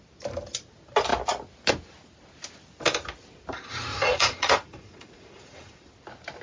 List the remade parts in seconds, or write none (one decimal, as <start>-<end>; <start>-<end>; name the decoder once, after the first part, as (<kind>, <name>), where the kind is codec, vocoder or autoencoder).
3.9-5.9 (vocoder, Vocos)